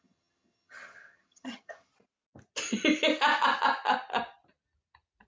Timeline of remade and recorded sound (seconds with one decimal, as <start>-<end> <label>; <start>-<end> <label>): 0.0-1.9 remade; 1.9-5.3 recorded